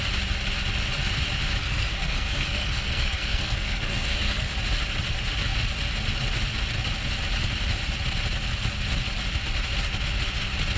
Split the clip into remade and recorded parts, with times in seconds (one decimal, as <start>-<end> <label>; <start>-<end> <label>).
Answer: 0.0-1.6 recorded; 1.6-4.5 remade; 4.5-10.8 recorded